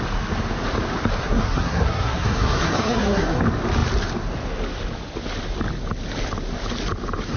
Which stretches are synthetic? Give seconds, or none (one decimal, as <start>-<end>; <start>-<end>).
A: 1.2-3.4